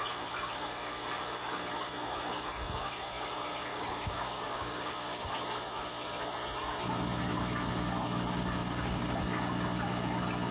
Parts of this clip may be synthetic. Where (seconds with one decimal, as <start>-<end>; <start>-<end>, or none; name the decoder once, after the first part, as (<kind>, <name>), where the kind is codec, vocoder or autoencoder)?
3.7-5.3 (codec, DAC); 8.6-9.1